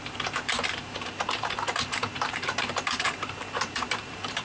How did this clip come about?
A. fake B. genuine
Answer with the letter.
A